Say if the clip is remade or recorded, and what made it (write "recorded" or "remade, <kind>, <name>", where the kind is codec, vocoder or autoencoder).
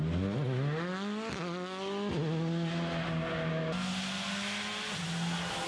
recorded